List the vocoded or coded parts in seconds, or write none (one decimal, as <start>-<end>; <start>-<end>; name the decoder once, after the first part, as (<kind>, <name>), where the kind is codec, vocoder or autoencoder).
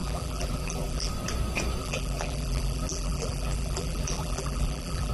0.0-1.1 (vocoder, BigVGAN v2); 1.8-5.1